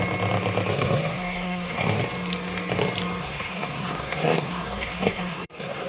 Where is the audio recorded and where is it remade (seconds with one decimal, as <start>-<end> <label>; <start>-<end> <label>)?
0.0-0.7 recorded; 0.7-2.0 remade; 2.0-3.2 recorded; 3.2-5.9 remade